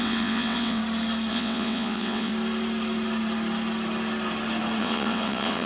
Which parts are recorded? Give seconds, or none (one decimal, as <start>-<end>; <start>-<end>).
0.8-1.3; 2.3-4.8